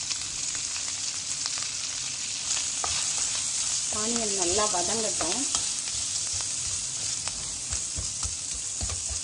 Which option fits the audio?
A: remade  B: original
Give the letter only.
B